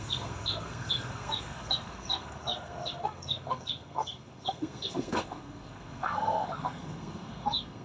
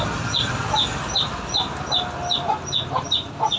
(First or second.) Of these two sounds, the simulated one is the first